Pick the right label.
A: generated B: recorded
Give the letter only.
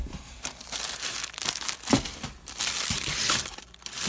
A